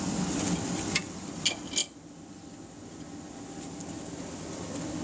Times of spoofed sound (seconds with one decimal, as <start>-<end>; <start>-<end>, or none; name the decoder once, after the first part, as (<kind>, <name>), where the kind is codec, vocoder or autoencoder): none